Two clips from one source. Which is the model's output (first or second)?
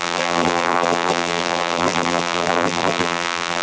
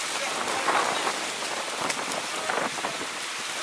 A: first